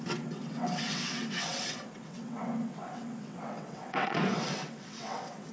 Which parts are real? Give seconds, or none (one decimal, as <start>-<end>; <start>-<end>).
none